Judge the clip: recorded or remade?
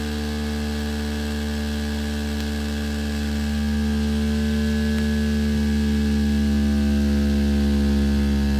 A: recorded